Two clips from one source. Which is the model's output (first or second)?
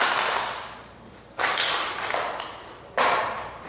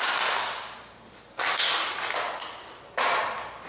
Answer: first